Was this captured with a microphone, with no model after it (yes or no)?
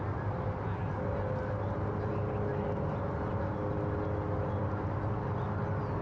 yes